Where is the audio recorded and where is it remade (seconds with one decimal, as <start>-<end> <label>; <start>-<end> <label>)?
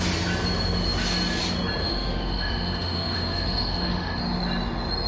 0.0-1.8 recorded; 1.8-4.2 remade; 4.2-5.1 recorded